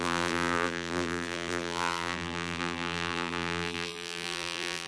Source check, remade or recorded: remade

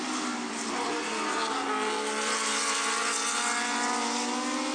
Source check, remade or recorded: recorded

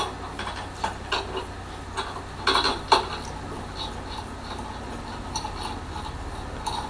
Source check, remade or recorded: recorded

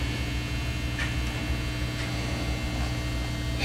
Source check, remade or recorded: recorded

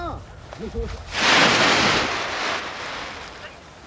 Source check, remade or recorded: recorded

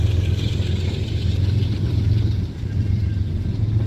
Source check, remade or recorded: remade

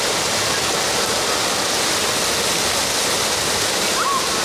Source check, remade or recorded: recorded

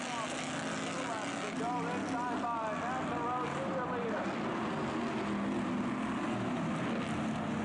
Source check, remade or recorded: recorded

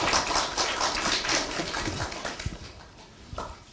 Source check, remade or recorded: remade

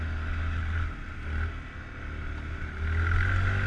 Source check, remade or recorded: recorded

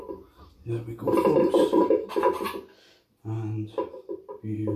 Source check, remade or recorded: recorded